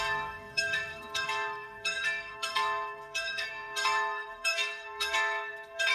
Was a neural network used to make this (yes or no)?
yes